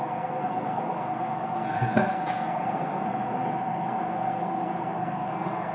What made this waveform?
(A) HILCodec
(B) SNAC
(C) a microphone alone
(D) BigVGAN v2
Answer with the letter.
B